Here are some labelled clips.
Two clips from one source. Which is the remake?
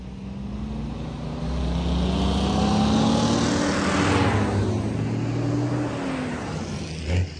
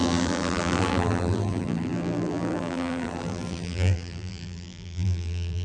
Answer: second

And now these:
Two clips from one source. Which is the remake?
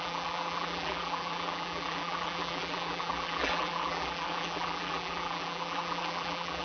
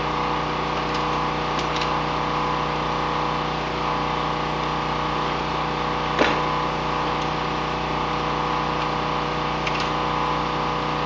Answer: first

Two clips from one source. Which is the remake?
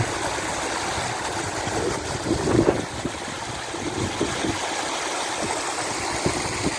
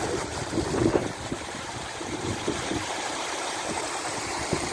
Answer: second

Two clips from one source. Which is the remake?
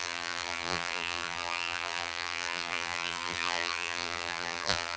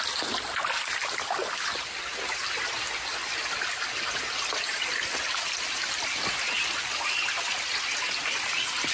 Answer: first